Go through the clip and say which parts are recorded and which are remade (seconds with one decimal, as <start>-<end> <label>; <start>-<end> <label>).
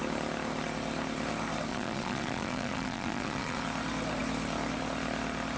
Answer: 0.0-1.7 recorded; 1.7-3.6 remade; 3.6-5.6 recorded